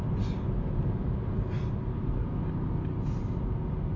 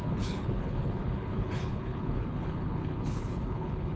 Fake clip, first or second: second